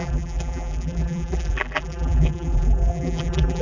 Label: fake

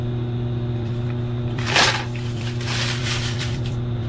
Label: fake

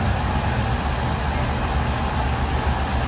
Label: real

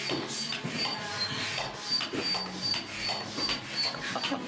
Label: real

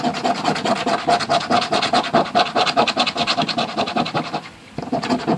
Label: fake